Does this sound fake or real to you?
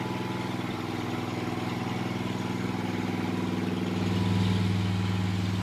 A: real